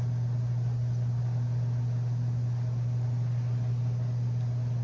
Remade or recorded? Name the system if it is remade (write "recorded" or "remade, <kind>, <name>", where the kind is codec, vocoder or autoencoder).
recorded